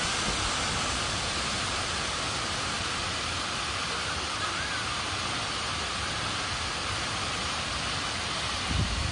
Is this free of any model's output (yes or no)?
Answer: yes